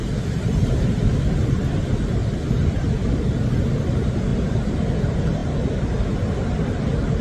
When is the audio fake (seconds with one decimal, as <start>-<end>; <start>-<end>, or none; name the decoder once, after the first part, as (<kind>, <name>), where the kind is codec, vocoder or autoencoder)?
none